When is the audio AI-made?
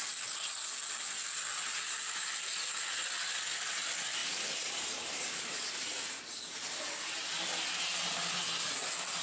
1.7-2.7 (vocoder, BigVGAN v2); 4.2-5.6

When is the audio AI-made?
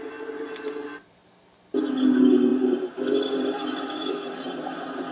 0.0-1.2 (vocoder, BigVGAN v2); 1.8-5.1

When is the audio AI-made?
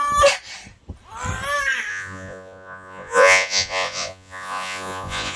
1.9-5.4 (vocoder, Vocos)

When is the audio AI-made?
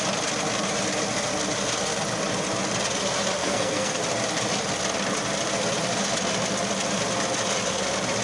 3.4-4.0 (codec, SNAC)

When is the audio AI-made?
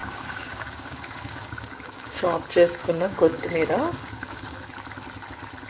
0.0-2.2 (codec, DAC); 2.8-4.6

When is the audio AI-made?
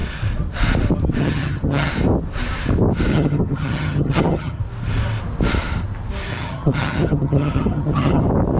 1.2-1.9 (vocoder, HiFi-GAN); 3.1-4.6; 6.3-8.2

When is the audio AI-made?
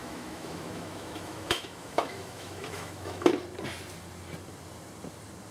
0.0-3.3 (autoencoder, DAC-VAE)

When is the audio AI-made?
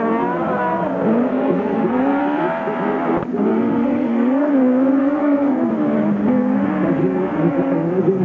1.3-2.2 (codec, SNAC); 3.5-4.5; 5.0-5.7; 7.0-8.2